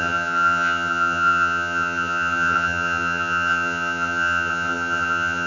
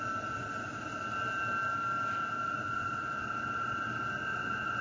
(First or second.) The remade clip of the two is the first